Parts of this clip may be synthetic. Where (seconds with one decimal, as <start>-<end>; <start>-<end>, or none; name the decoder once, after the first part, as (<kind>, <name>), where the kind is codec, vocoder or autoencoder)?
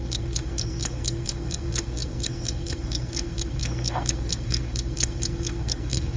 0.0-6.2 (codec, SNAC)